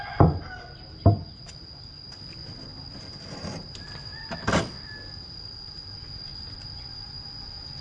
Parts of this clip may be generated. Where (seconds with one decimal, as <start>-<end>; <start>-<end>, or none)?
none